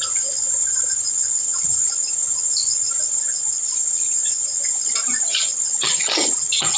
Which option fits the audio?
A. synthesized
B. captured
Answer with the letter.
A